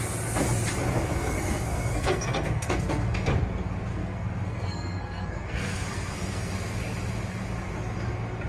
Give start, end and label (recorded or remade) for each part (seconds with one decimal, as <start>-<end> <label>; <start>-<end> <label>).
0.0-1.2 recorded; 1.2-3.3 remade; 3.3-3.9 recorded; 3.9-6.5 remade; 6.5-8.5 recorded